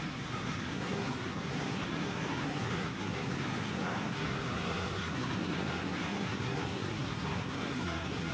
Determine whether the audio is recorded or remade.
remade